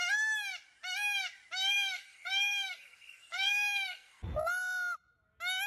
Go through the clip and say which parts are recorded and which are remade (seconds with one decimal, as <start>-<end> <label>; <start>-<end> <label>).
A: 0.0-1.7 recorded; 1.7-4.2 remade; 4.2-5.7 recorded